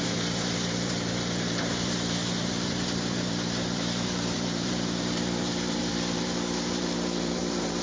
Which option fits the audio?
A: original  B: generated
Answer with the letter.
B